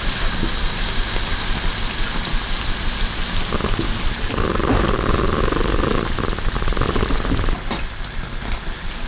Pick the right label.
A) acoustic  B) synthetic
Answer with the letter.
A